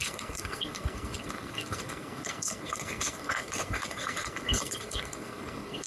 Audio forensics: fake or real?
fake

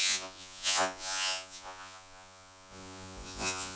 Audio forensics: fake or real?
fake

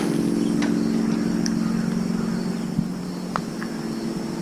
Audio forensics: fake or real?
real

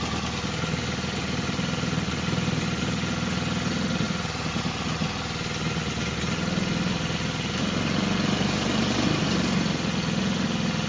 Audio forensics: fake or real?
real